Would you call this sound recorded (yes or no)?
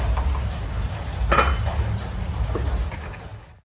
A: yes